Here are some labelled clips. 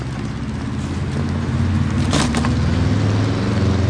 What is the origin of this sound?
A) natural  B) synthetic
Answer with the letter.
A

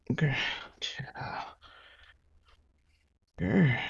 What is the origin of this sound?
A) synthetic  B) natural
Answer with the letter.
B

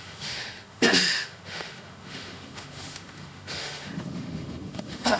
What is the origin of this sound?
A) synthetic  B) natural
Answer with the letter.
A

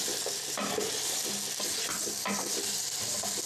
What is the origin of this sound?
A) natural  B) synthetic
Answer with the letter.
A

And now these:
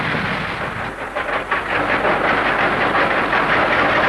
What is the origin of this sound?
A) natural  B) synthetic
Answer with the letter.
A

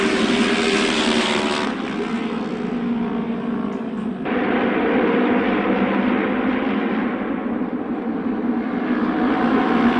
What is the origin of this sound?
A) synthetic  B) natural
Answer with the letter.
B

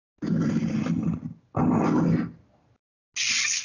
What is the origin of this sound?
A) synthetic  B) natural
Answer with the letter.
B